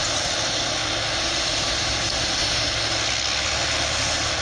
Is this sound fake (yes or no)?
no